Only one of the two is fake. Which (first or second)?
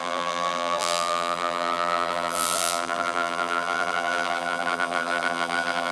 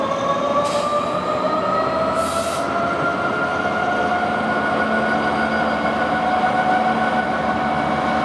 first